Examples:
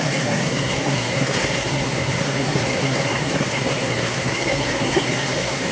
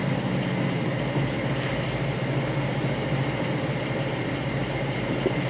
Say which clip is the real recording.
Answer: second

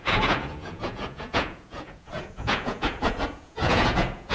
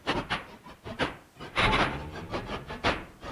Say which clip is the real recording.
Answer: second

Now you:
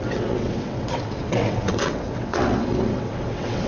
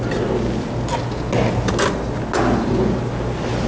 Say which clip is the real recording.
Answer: second